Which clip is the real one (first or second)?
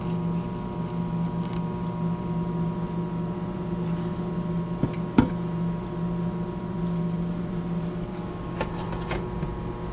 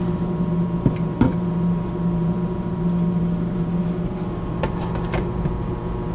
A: first